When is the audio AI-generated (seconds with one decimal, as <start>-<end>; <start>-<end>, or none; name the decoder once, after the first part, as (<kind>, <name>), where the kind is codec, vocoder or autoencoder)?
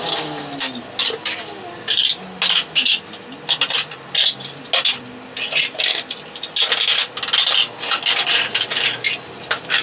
none